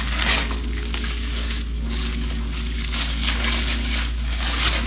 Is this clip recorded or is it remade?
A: remade